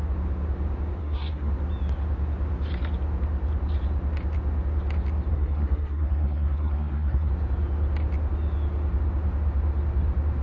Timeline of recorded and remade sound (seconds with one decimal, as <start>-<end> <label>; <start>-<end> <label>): 0.0-1.0 recorded; 1.0-1.5 remade; 1.5-5.3 recorded; 5.3-7.3 remade; 7.3-10.4 recorded